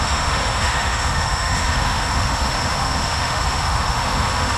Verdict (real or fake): fake